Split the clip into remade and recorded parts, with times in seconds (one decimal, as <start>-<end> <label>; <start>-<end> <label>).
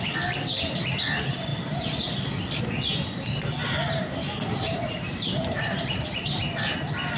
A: 0.0-3.6 recorded; 3.6-6.7 remade; 6.7-7.2 recorded